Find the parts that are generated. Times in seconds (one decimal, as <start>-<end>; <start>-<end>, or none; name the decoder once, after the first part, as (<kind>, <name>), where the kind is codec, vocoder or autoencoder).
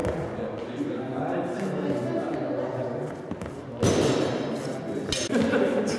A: none